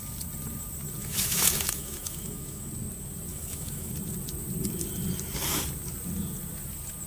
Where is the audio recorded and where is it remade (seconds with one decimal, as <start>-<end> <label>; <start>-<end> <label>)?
0.0-1.0 recorded; 1.0-2.7 remade; 2.7-3.3 recorded; 3.3-3.9 remade; 3.9-7.1 recorded